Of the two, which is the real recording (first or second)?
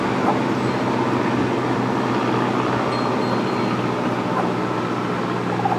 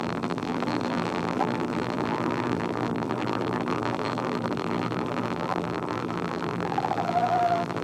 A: first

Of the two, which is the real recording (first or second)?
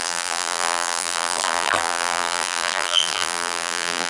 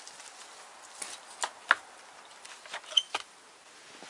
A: second